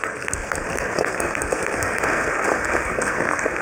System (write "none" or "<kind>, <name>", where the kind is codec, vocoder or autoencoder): codec, SNAC